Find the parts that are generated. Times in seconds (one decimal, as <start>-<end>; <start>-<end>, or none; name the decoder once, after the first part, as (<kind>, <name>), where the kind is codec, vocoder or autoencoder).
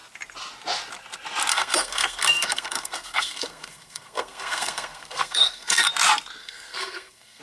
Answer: 1.5-5.9 (codec, SNAC); 6.4-7.4